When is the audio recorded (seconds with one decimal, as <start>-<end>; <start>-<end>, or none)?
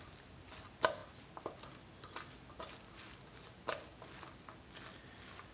0.0-5.5